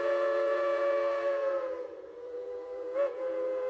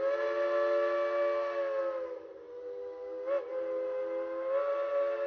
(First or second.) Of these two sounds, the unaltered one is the second